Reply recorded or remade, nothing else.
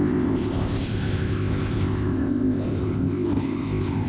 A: remade